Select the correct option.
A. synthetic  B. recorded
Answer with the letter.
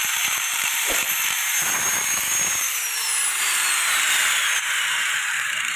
A